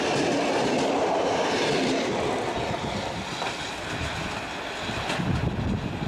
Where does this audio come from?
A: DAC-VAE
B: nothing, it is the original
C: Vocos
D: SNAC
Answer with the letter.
B